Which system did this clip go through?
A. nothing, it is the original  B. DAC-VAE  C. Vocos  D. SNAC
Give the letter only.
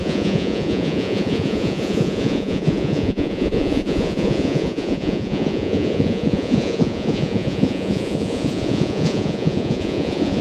C